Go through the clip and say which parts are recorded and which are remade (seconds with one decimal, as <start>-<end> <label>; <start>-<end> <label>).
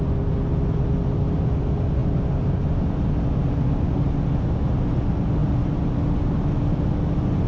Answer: 0.0-7.5 recorded